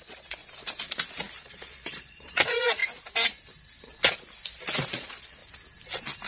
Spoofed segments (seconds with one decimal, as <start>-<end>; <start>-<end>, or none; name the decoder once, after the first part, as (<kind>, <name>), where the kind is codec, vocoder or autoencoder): 0.0-0.4 (vocoder, Vocos); 1.4-2.8; 4.9-5.4